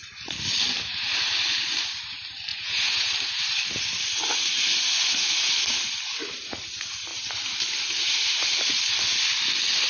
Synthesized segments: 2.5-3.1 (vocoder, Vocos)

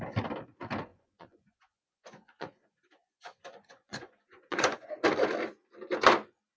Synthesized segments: 0.9-4.9 (vocoder, Vocos)

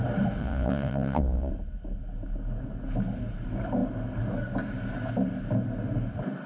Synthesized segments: 0.4-1.5 (vocoder, Vocos)

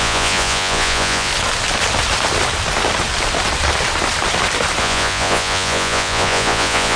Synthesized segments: 0.0-1.3 (vocoder, Vocos); 4.8-7.0

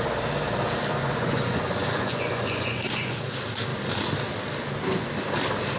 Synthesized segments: 1.0-3.2 (vocoder, Vocos)

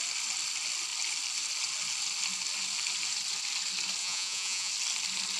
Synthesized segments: 4.0-4.7 (vocoder, Vocos)

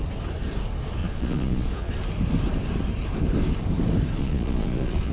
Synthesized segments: 1.0-1.9 (vocoder, Vocos); 4.2-5.1